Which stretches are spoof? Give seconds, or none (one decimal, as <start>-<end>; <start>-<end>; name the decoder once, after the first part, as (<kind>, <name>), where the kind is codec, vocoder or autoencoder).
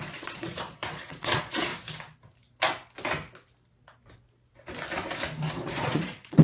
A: 0.0-1.7 (vocoder, Vocos); 5.5-6.4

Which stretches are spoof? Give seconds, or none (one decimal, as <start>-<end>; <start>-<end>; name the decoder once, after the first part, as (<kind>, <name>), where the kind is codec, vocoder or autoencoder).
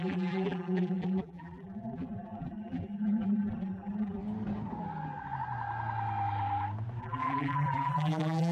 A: 0.0-4.2 (vocoder, BigVGAN v2); 7.0-8.5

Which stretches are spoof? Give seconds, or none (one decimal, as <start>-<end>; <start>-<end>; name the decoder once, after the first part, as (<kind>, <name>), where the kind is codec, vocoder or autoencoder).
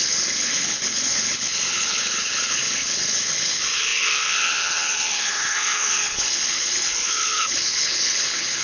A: 0.0-8.6 (codec, HILCodec)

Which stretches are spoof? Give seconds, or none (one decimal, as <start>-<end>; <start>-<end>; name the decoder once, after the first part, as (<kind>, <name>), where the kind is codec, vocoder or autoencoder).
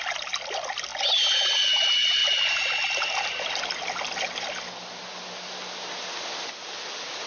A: none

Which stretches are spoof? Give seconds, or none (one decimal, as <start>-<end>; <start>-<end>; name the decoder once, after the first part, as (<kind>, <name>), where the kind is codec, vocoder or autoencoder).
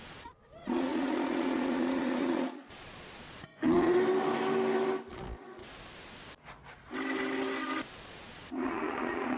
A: 0.0-4.0 (vocoder, Vocos); 5.1-5.6; 8.1-9.4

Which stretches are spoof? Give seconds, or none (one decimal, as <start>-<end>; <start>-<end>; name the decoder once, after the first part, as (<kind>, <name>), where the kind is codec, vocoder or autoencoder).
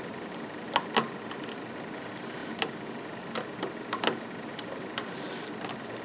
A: none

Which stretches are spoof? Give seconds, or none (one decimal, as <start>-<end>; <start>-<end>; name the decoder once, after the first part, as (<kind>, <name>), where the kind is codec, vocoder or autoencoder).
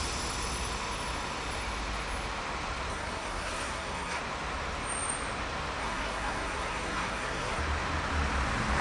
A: 2.9-4.2 (codec, SNAC); 5.8-7.6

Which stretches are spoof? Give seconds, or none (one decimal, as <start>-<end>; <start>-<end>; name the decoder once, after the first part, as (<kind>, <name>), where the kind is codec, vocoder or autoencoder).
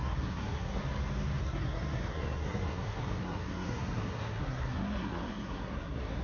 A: 0.0-0.8 (codec, SNAC); 1.4-6.2